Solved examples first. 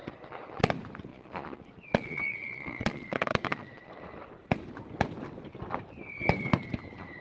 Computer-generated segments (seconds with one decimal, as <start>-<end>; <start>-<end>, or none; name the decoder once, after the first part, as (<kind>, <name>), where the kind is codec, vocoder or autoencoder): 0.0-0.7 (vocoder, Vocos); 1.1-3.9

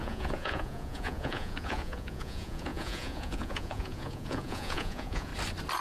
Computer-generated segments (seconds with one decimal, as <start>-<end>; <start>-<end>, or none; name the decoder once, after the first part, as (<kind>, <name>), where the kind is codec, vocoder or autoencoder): 0.0-5.3 (vocoder, Vocos)

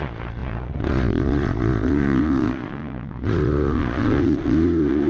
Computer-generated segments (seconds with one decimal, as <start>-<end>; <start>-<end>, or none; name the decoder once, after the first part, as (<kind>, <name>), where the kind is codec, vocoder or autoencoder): 0.0-5.1 (vocoder, Vocos)

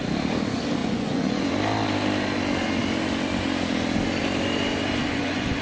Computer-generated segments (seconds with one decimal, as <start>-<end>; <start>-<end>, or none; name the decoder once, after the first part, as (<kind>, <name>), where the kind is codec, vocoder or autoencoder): 0.8-1.5 (vocoder, Vocos); 5.0-5.6

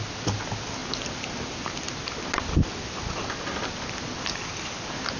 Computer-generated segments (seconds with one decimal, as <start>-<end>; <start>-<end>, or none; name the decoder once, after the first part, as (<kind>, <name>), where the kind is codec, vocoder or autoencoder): none